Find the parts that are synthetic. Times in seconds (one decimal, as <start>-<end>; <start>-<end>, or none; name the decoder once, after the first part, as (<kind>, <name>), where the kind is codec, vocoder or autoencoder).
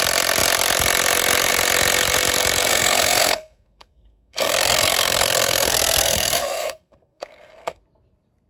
2.7-7.8 (codec, SNAC)